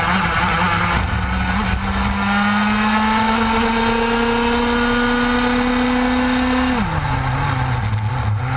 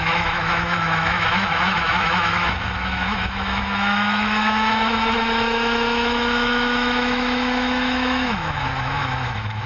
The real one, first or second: first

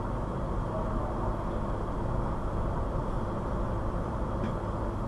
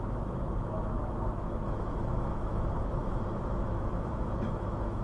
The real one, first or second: first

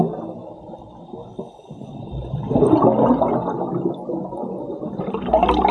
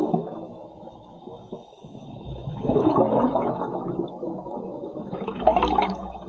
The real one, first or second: first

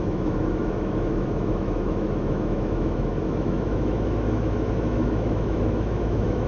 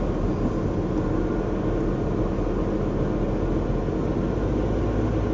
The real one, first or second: second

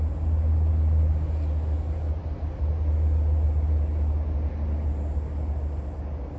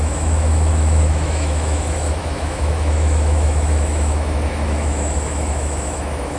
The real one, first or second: first